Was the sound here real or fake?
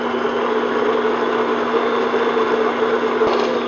real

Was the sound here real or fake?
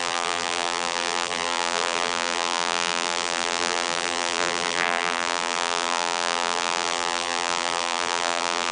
fake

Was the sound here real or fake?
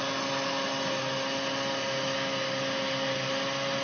real